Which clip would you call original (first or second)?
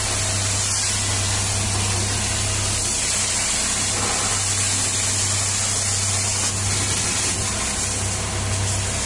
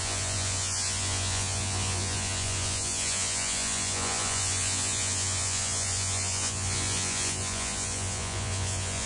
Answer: first